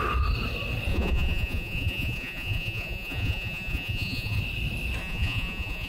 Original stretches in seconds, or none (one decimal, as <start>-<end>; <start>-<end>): 0.0-0.9; 4.4-5.0